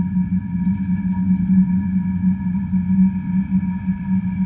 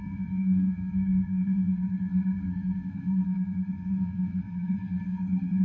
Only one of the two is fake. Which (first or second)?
second